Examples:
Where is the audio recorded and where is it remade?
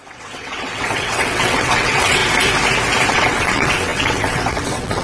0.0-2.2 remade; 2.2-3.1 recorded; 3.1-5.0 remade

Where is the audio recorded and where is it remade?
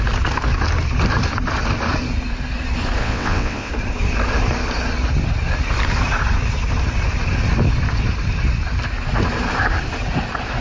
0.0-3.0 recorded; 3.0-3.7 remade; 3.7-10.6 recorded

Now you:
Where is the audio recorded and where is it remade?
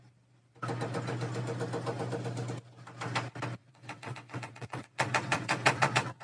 0.0-3.6 recorded; 3.6-6.2 remade